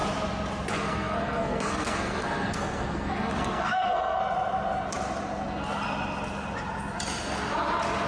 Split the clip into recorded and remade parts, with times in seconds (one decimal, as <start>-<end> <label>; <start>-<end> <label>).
0.0-0.7 recorded; 0.7-4.2 remade; 4.2-8.1 recorded